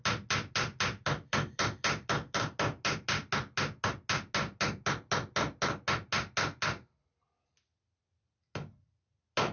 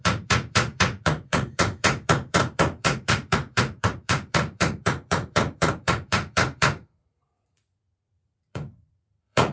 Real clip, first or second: first